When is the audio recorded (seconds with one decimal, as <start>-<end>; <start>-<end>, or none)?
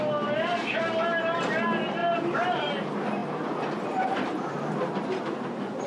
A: 0.0-2.0; 2.7-3.2; 4.8-5.9